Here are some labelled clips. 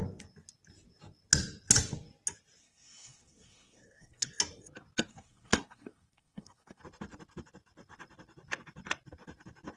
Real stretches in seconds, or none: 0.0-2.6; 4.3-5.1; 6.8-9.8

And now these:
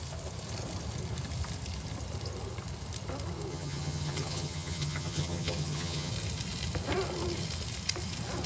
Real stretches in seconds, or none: 0.0-3.5; 6.1-8.5

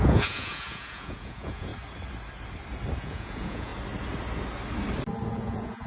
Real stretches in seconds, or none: 1.7-3.0; 3.7-5.3

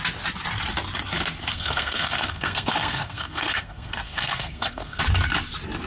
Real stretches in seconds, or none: 0.0-1.5; 5.0-5.9